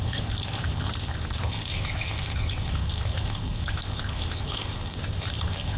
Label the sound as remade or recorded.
remade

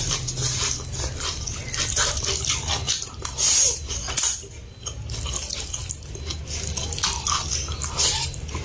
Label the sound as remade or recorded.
recorded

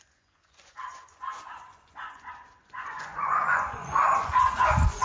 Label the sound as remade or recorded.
remade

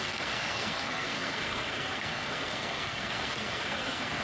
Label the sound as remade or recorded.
remade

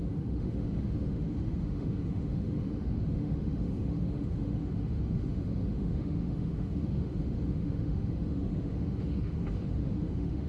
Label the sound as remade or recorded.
remade